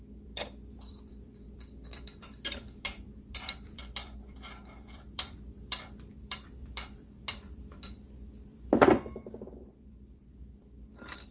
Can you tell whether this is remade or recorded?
remade